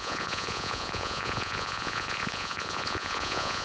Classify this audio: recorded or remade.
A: remade